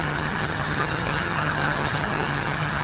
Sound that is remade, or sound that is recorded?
remade